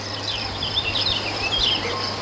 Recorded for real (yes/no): no